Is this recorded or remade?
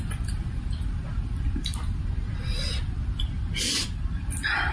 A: recorded